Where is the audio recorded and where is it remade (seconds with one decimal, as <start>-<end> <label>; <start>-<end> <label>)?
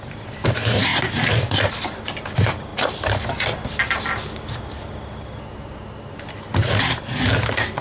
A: 0.0-2.7 remade; 2.7-7.8 recorded